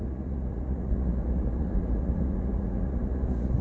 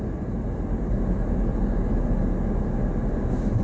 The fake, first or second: first